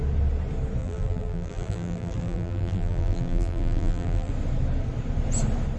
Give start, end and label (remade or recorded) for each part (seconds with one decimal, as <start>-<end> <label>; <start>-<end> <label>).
0.0-0.8 recorded; 0.8-4.3 remade; 4.3-5.8 recorded

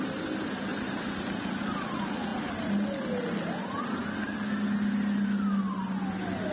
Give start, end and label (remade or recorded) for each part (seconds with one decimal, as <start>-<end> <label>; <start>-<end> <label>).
0.0-0.7 recorded; 0.7-1.6 remade; 1.6-6.5 recorded